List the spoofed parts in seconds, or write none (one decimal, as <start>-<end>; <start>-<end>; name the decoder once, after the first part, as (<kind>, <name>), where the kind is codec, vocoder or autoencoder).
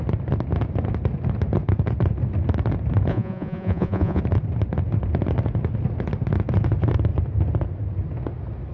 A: 3.1-4.2 (vocoder, Vocos)